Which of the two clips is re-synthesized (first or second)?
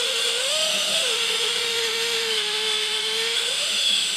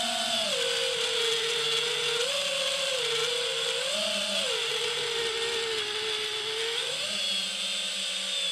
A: first